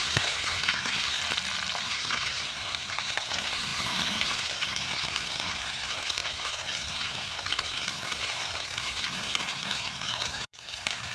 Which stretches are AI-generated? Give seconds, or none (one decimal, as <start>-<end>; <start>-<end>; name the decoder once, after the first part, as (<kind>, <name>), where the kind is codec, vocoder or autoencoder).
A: 0.0-1.2 (codec, SNAC); 1.8-11.1